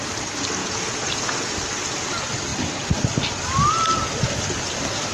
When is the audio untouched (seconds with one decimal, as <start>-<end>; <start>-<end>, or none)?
0.0-0.6; 1.5-5.1